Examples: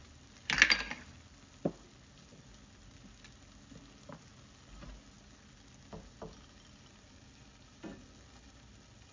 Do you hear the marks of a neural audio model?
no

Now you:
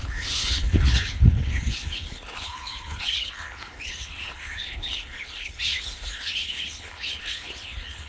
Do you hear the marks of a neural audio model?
yes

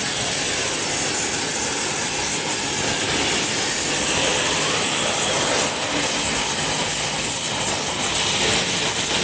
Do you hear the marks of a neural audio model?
no